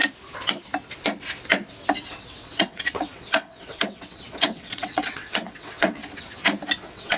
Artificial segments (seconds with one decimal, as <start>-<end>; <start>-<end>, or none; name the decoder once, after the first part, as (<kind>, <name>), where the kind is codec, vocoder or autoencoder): 2.1-6.0 (vocoder, WaveNeXt); 6.8-7.2